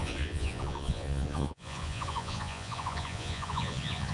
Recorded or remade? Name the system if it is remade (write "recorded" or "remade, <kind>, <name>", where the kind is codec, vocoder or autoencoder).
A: remade, vocoder, Vocos